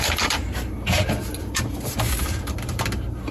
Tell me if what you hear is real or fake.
fake